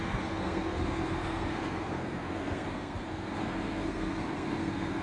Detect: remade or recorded remade